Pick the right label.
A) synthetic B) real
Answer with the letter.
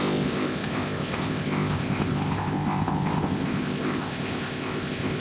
A